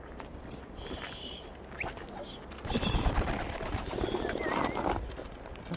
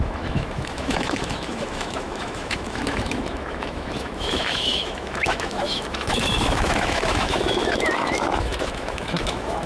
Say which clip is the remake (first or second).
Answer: second